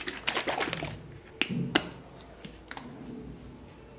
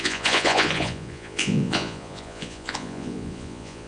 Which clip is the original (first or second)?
first